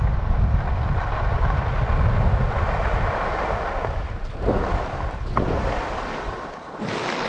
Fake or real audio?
real